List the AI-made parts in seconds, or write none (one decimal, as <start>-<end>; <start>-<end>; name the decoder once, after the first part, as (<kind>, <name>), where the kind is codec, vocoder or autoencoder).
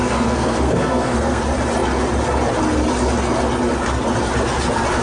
0.0-1.4 (codec, SNAC)